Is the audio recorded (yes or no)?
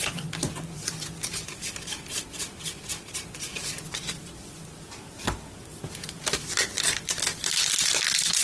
no